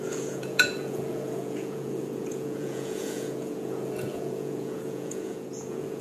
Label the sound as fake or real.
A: fake